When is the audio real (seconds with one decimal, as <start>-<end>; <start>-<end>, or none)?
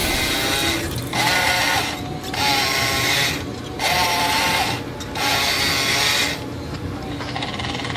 0.0-8.0